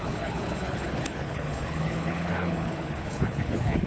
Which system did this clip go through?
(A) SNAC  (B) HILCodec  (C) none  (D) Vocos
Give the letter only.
B